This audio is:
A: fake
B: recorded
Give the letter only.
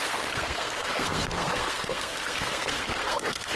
A